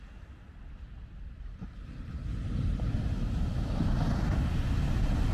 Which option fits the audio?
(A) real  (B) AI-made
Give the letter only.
A